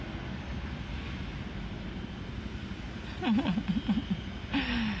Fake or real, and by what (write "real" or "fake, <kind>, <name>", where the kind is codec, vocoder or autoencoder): real